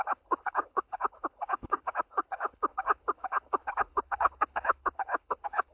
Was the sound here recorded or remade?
remade